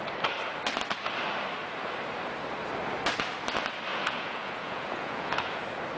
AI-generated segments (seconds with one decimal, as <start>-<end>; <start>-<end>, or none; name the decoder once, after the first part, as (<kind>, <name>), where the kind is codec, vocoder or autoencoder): 3.9-5.6 (vocoder, Vocos)